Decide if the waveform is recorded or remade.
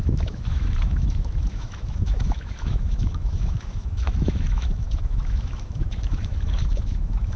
remade